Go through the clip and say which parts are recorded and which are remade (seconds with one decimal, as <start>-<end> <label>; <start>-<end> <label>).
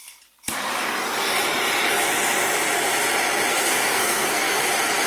0.0-3.5 recorded; 3.5-4.6 remade; 4.6-5.1 recorded